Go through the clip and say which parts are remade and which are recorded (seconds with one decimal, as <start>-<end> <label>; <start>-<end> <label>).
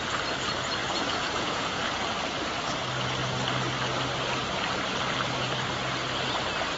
0.0-0.8 recorded; 0.8-1.9 remade; 1.9-6.8 recorded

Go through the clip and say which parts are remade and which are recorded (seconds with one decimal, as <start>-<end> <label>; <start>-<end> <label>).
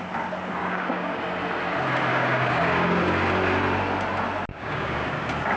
0.0-0.6 recorded; 0.6-1.2 remade; 1.2-2.1 recorded; 2.1-3.0 remade; 3.0-4.5 recorded; 4.5-5.1 remade; 5.1-5.6 recorded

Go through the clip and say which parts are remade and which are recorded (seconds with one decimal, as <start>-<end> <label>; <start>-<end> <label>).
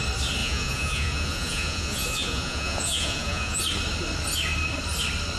0.0-0.4 recorded; 0.4-3.6 remade; 3.6-5.4 recorded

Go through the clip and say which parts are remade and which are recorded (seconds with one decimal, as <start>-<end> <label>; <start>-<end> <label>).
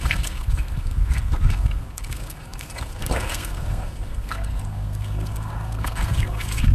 0.0-6.7 remade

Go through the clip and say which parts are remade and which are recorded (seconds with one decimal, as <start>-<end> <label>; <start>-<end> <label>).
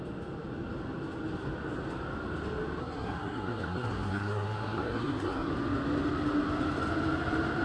0.0-2.8 recorded; 2.8-5.5 remade; 5.5-7.6 recorded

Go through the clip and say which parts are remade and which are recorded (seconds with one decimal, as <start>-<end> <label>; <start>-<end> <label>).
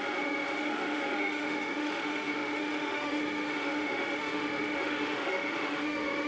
0.0-6.3 remade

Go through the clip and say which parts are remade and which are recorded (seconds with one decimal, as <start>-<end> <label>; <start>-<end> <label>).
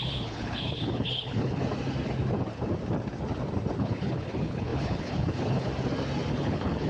0.0-1.6 remade; 1.6-3.8 recorded; 3.8-5.7 remade; 5.7-6.3 recorded; 6.3-6.9 remade